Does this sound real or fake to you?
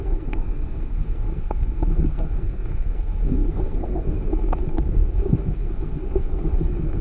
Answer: fake